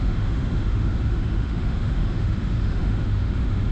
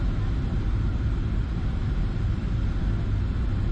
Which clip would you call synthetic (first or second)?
first